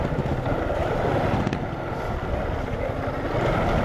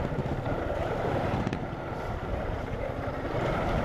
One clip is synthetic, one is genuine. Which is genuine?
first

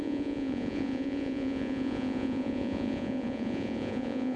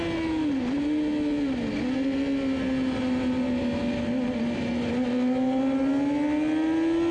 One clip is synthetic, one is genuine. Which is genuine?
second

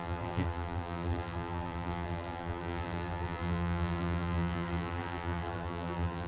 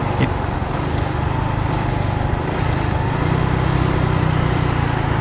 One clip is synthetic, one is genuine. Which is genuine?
second